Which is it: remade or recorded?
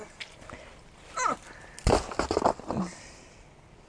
recorded